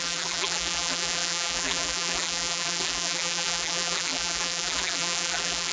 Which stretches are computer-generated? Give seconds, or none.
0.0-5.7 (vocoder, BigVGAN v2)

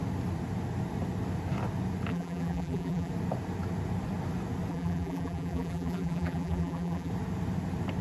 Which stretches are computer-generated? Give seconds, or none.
2.1-3.1 (vocoder, BigVGAN v2); 4.7-7.1

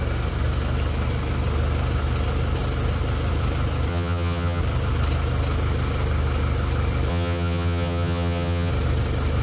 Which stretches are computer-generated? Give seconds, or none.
3.9-4.6 (vocoder, HiFi-GAN); 7.1-8.7

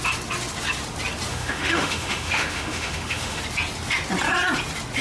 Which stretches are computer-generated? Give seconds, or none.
1.3-3.4 (autoencoder, DAC-VAE)

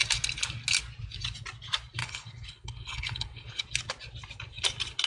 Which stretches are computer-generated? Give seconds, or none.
2.0-3.6 (codec, HILCodec)